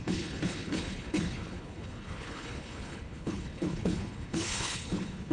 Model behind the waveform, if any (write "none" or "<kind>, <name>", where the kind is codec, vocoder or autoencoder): codec, HILCodec